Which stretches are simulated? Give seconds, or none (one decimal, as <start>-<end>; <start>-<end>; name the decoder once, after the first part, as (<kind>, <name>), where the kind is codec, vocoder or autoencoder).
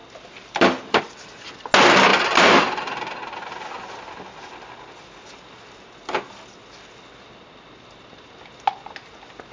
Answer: 2.1-3.2 (vocoder, BigVGAN v2)